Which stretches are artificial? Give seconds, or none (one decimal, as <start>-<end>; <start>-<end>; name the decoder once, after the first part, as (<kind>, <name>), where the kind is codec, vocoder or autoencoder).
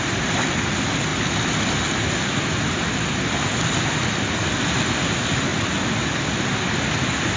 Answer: 5.5-6.2 (vocoder, BigVGAN v2)